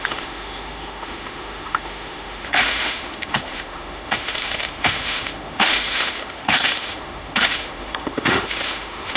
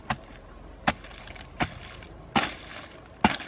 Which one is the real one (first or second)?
second